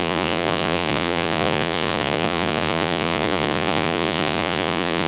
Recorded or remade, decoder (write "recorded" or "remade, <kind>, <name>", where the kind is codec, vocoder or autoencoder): remade, vocoder, Vocos